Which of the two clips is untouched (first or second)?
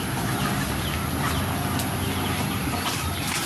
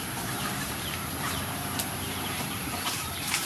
first